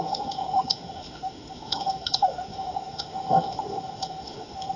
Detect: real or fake fake